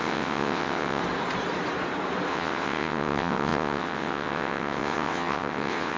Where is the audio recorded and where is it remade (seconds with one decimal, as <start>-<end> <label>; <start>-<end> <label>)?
0.0-1.0 remade; 1.0-2.3 recorded; 2.3-6.0 remade